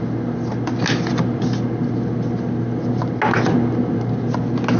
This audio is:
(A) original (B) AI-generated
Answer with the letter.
A